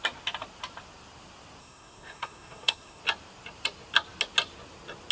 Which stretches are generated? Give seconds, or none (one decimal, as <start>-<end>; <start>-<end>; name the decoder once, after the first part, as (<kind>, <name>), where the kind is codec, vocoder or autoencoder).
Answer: 1.6-3.0 (codec, SNAC)